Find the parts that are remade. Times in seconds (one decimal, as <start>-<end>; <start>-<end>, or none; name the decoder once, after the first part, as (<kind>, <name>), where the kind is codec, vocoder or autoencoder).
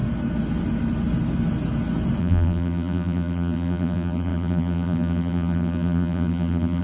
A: 2.2-6.8 (vocoder, BigVGAN v2)